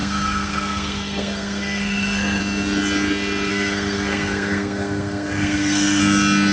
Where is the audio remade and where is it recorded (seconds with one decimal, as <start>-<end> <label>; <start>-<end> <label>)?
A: 0.0-2.4 remade; 2.4-3.5 recorded; 3.5-6.0 remade; 6.0-6.5 recorded